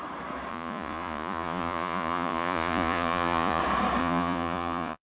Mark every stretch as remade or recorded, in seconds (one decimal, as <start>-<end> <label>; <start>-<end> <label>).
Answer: 0.0-0.5 recorded; 0.5-3.6 remade; 3.6-4.0 recorded; 4.0-5.1 remade